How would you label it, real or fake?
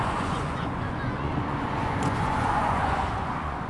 fake